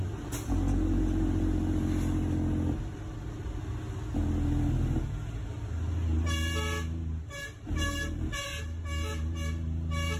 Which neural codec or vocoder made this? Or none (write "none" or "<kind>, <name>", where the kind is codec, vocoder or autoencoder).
none